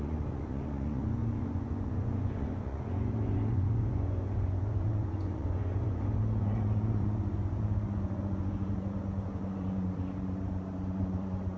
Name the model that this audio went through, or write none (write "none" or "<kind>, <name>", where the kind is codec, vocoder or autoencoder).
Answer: vocoder, Vocos